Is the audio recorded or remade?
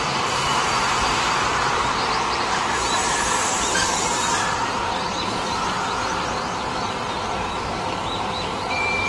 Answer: remade